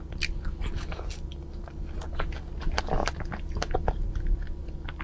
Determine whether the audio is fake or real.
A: real